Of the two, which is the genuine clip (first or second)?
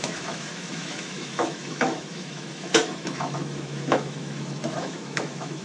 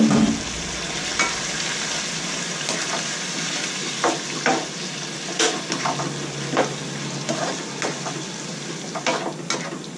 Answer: second